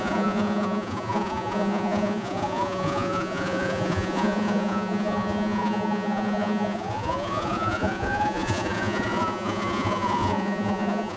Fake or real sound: fake